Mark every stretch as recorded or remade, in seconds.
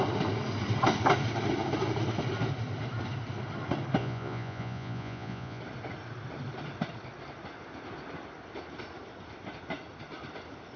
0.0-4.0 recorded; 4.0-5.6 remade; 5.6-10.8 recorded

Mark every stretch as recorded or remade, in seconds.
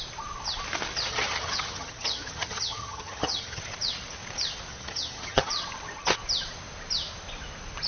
0.0-1.1 recorded; 1.1-3.6 remade; 3.6-4.7 recorded; 4.7-5.5 remade; 5.5-7.9 recorded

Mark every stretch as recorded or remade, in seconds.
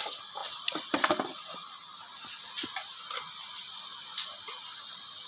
0.0-0.4 recorded; 0.4-1.0 remade; 1.0-5.3 recorded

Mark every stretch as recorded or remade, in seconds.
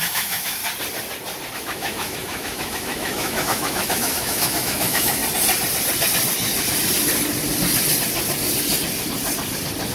0.0-0.6 remade; 0.6-1.5 recorded; 1.5-5.2 remade; 5.2-9.9 recorded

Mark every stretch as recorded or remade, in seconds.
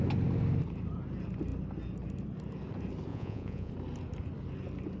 0.0-3.1 recorded; 3.1-3.7 remade; 3.7-5.0 recorded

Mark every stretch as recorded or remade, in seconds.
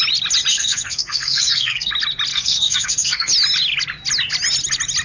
0.0-0.5 recorded; 0.5-1.9 remade; 1.9-2.3 recorded; 2.3-3.3 remade; 3.3-5.0 recorded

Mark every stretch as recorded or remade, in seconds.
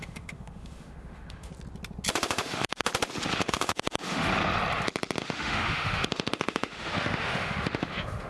0.0-1.5 remade; 1.5-2.1 recorded; 2.1-2.9 remade; 2.9-3.4 recorded; 3.4-4.3 remade; 4.3-5.2 recorded; 5.2-8.3 remade